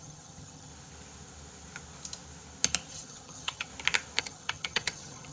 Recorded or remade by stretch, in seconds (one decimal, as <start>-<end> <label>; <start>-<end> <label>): 0.0-0.7 remade; 0.7-2.9 recorded; 2.9-3.7 remade; 3.7-4.2 recorded; 4.2-5.3 remade